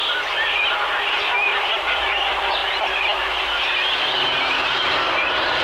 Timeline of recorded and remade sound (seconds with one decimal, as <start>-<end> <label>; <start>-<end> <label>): 0.0-1.5 recorded; 1.5-2.1 remade; 2.1-5.6 recorded